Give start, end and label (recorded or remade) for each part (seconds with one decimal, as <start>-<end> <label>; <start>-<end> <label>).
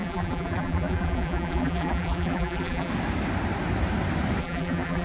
0.0-2.9 remade; 2.9-4.4 recorded; 4.4-5.0 remade